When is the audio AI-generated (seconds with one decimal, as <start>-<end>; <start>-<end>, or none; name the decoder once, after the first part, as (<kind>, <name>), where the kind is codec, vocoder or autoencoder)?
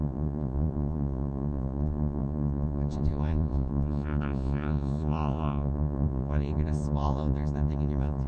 0.0-8.3 (vocoder, Vocos)